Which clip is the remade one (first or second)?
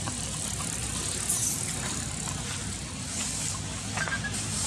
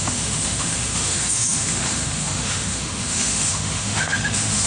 second